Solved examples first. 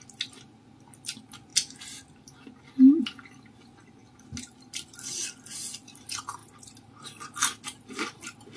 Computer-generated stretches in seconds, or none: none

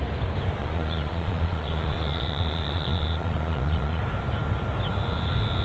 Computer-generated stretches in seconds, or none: 0.6-4.0 (vocoder, Vocos)

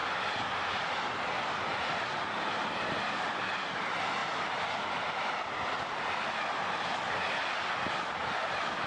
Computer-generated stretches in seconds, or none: none

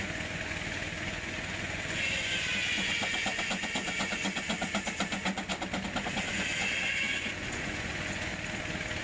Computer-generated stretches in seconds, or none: 0.0-5.5 (vocoder, Vocos); 6.1-8.3

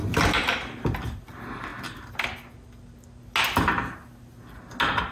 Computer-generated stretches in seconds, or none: none